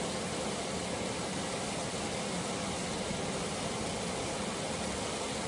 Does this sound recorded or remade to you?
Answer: recorded